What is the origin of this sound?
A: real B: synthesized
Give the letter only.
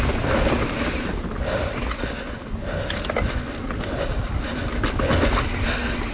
A